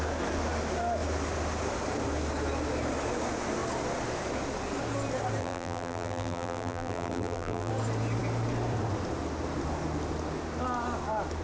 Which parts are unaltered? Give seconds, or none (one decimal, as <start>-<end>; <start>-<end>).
0.0-5.4; 7.7-11.4